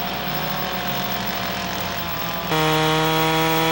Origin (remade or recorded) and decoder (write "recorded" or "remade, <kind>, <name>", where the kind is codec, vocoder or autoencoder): recorded